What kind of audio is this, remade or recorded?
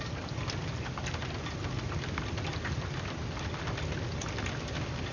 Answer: recorded